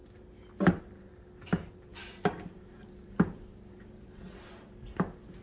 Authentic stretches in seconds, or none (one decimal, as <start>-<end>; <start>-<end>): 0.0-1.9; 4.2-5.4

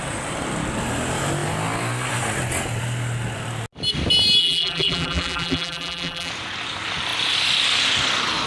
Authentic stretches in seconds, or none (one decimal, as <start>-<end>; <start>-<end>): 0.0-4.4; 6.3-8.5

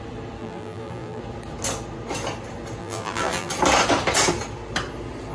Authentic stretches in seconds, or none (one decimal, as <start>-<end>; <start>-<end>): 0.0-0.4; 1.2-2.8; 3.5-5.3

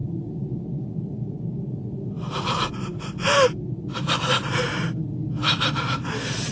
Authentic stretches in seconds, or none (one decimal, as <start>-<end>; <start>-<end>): 0.6-6.5

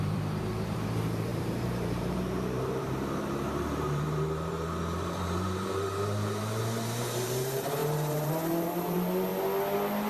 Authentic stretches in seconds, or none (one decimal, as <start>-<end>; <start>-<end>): 9.3-10.1